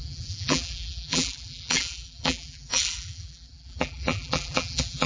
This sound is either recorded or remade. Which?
remade